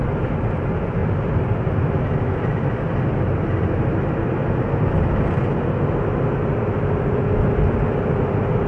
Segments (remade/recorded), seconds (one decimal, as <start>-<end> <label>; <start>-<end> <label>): 0.0-8.7 recorded